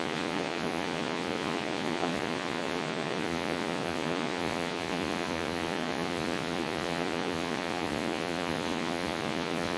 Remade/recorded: remade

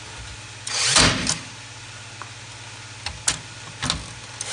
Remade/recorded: recorded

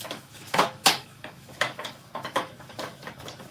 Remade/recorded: remade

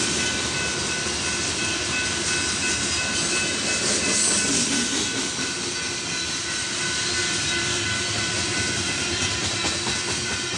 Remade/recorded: recorded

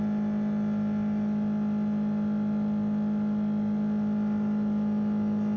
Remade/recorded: recorded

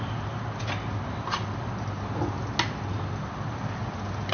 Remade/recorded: recorded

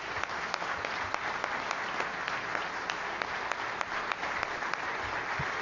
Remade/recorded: recorded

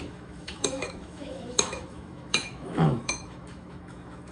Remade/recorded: remade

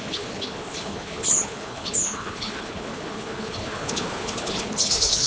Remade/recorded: remade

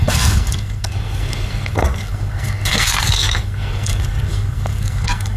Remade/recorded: remade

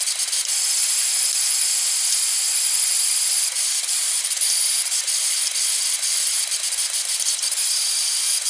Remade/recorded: recorded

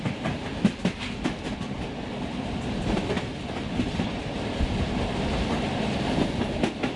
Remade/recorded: recorded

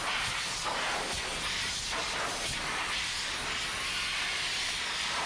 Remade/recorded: recorded